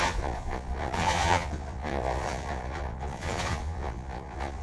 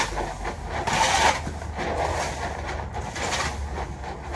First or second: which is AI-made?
first